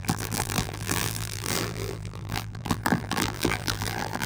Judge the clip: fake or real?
fake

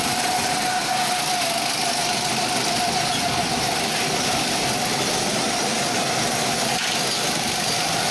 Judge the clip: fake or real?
real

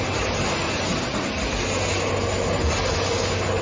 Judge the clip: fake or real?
real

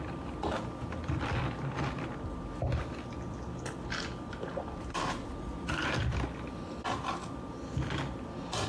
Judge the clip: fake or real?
fake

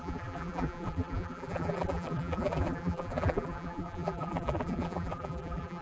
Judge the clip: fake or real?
fake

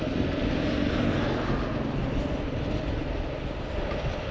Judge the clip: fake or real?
real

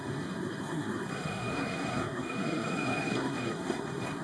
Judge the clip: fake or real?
fake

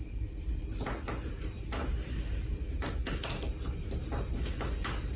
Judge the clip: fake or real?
real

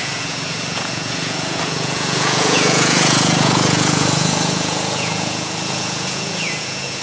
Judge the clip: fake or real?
fake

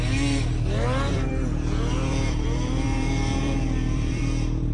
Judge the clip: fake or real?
fake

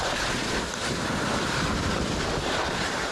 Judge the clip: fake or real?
real